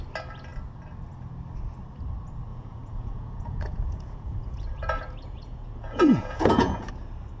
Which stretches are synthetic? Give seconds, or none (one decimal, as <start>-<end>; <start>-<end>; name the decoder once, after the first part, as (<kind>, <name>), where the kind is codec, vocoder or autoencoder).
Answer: 2.5-6.9 (vocoder, Vocos)